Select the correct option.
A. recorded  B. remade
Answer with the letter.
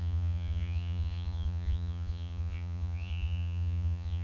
B